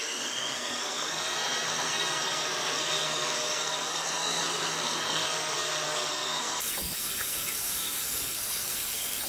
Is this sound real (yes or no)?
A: no